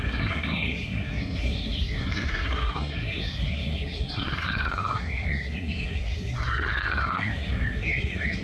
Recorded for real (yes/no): no